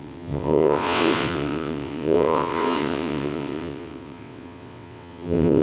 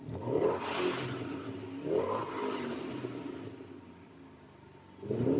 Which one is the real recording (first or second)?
second